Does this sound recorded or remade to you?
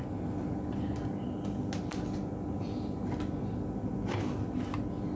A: recorded